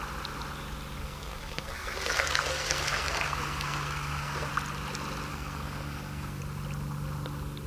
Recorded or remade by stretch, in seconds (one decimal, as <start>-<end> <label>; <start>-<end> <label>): 0.0-1.0 recorded; 1.0-4.5 remade; 4.5-5.3 recorded; 5.3-6.4 remade; 6.4-7.7 recorded